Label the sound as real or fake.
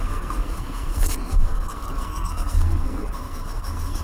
fake